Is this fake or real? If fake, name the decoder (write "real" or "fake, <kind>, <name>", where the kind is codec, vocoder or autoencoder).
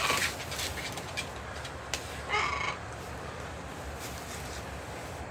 real